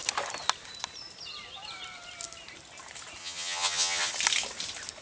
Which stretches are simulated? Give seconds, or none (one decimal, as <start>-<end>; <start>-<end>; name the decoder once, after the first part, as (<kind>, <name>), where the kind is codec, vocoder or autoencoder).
3.2-4.1 (vocoder, HiFi-GAN)